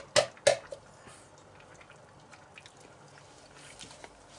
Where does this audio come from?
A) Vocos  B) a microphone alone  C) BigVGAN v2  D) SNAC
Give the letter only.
B